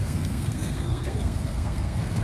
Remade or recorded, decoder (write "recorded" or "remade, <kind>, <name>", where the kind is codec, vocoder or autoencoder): remade, codec, SNAC